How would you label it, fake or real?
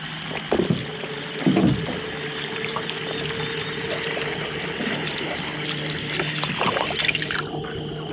real